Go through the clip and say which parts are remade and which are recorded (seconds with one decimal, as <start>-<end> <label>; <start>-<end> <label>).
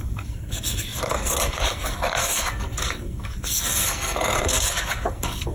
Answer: 0.0-5.5 remade